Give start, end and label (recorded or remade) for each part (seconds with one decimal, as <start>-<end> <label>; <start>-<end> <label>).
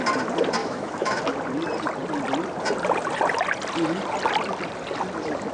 0.0-0.6 recorded; 0.6-1.2 remade; 1.2-5.5 recorded